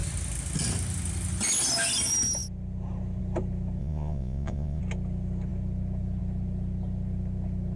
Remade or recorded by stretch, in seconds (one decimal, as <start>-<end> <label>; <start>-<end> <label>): 0.0-3.8 recorded; 3.8-4.8 remade; 4.8-7.8 recorded